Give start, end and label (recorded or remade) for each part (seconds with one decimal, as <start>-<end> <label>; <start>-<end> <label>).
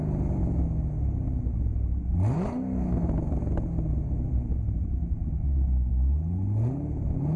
0.0-7.4 recorded